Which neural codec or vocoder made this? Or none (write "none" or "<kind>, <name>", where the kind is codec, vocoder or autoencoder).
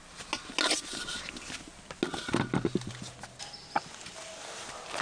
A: none